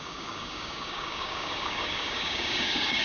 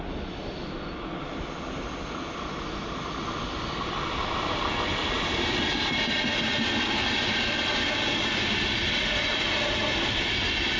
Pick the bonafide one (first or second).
second